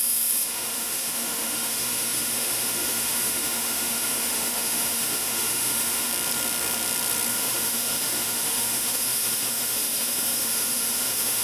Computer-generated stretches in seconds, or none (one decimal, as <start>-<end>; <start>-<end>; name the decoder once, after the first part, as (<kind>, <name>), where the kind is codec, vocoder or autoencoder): 0.0-6.1 (autoencoder, DAC-VAE); 7.3-11.4